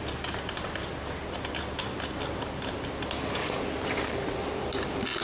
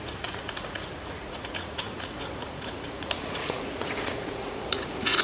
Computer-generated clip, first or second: second